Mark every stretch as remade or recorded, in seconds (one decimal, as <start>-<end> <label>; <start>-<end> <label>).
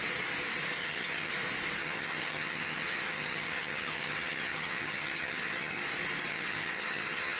0.0-0.8 recorded; 0.8-1.3 remade; 1.3-1.8 recorded; 1.8-5.8 remade; 5.8-6.3 recorded; 6.3-7.4 remade